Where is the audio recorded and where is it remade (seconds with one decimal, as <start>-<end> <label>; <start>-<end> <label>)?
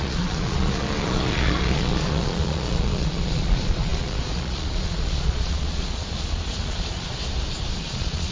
0.0-7.1 remade; 7.1-7.8 recorded; 7.8-8.3 remade